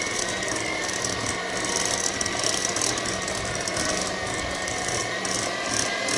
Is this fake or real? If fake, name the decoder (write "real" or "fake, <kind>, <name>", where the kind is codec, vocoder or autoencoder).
real